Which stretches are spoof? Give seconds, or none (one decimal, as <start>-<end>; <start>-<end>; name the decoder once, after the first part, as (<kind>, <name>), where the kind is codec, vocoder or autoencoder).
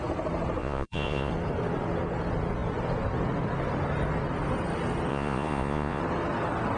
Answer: 0.6-1.3 (vocoder, Vocos); 5.1-6.0